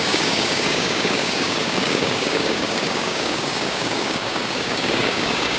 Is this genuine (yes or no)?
no